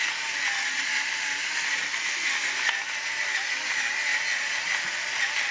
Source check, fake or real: real